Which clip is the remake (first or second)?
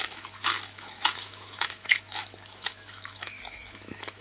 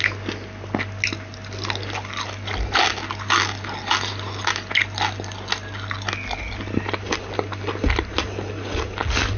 first